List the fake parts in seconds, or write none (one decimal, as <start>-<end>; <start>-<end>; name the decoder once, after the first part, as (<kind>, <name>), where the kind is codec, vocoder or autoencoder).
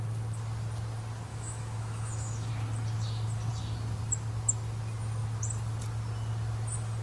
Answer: 1.3-2.5 (autoencoder, DAC-VAE)